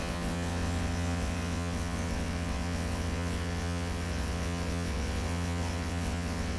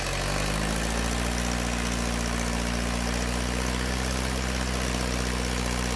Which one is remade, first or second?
first